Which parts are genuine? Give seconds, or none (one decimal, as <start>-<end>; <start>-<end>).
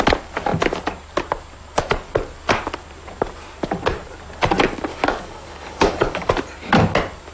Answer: 0.0-4.9; 6.3-7.3